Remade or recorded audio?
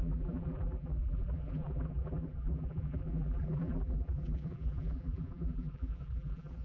remade